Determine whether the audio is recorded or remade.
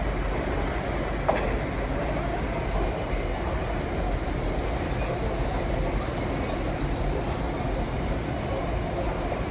recorded